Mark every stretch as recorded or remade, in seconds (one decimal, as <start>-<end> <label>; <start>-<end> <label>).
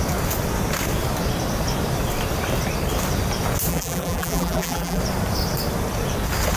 0.0-3.7 recorded; 3.7-5.0 remade; 5.0-6.6 recorded